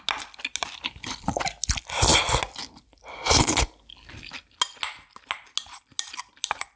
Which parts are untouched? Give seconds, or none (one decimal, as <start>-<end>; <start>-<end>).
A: 0.0-6.8